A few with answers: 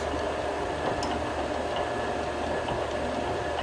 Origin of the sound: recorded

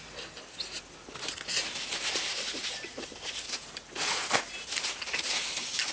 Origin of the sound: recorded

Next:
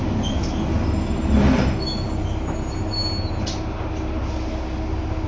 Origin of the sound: recorded